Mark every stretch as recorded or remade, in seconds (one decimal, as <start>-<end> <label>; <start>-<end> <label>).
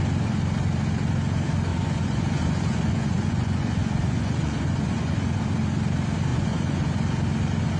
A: 0.0-1.7 recorded; 1.7-5.4 remade; 5.4-6.3 recorded; 6.3-7.0 remade; 7.0-7.8 recorded